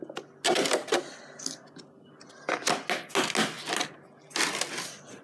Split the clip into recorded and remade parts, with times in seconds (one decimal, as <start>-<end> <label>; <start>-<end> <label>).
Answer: 0.0-5.2 recorded